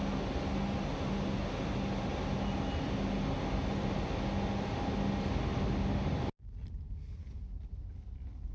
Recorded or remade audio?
recorded